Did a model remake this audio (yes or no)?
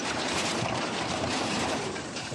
yes